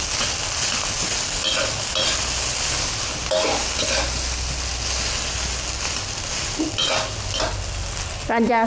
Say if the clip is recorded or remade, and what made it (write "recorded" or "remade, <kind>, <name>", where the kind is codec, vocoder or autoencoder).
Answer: recorded